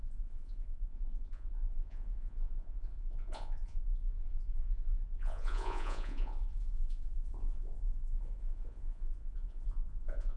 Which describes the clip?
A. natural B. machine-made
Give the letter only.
B